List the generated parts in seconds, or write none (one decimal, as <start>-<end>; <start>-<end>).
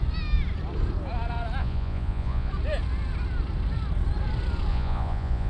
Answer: 1.6-2.5; 4.7-5.5